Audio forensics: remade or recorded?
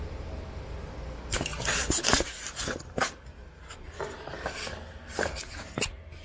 recorded